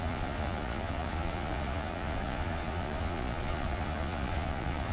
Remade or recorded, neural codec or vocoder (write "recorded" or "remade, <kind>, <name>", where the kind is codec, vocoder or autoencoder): remade, vocoder, Vocos